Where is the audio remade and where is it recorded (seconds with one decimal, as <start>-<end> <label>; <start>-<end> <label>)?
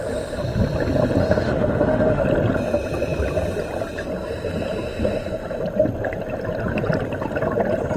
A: 0.0-1.2 recorded; 1.2-2.2 remade; 2.2-8.0 recorded